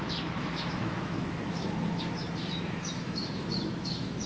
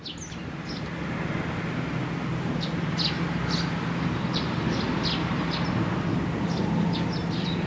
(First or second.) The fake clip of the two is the first